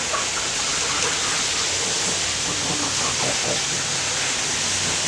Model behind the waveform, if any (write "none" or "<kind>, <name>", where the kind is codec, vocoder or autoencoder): none